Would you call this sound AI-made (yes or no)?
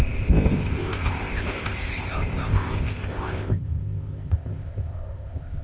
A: yes